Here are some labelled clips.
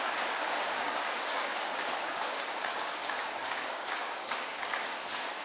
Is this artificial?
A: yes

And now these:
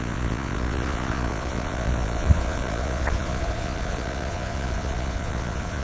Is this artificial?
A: yes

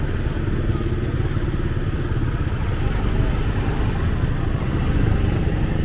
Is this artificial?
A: no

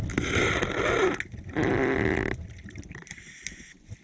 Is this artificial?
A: no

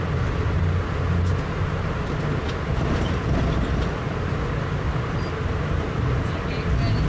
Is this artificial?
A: no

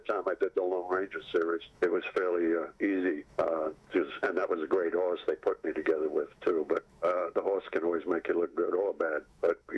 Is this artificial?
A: yes